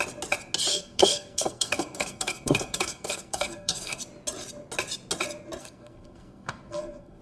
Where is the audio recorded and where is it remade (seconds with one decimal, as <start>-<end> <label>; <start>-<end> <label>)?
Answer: 0.0-0.7 recorded; 0.7-4.0 remade; 4.0-5.6 recorded; 5.6-7.2 remade